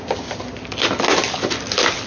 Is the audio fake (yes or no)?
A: no